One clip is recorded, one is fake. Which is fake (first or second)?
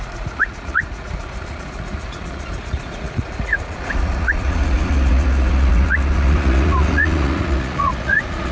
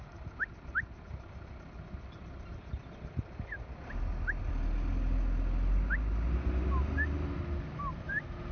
first